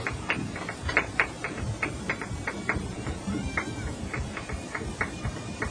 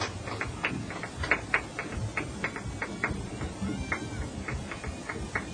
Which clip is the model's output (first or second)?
first